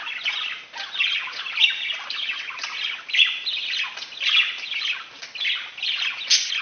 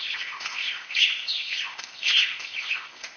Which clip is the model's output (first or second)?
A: second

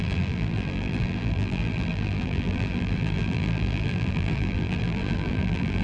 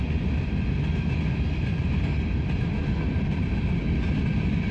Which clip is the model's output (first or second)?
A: first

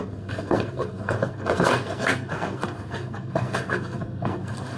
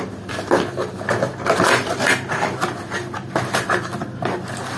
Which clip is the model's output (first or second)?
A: first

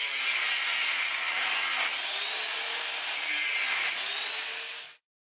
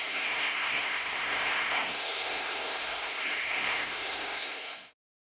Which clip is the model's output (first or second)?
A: second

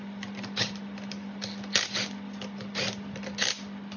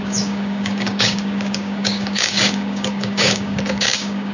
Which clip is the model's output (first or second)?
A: second